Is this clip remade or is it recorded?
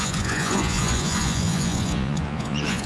remade